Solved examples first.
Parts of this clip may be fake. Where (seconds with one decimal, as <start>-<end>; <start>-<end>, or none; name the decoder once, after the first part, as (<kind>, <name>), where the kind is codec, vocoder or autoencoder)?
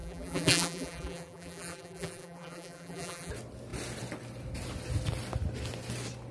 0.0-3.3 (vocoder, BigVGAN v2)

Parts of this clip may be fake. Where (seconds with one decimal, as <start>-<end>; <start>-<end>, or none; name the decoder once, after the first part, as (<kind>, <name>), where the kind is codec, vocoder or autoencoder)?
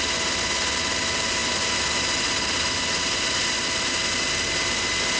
none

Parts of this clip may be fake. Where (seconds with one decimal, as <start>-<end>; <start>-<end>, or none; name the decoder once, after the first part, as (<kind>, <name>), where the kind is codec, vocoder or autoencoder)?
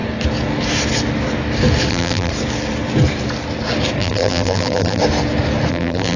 1.9-2.3 (vocoder, BigVGAN v2); 4.0-5.0; 5.7-6.2